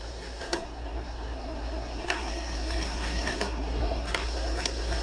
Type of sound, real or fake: fake